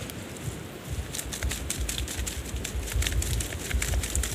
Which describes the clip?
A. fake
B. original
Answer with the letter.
B